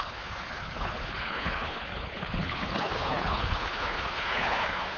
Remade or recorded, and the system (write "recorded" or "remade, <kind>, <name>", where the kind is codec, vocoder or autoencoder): remade, codec, HILCodec